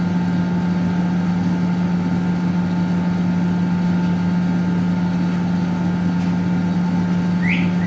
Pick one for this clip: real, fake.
real